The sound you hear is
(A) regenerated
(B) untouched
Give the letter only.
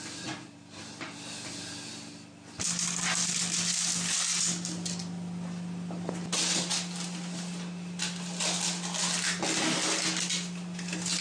B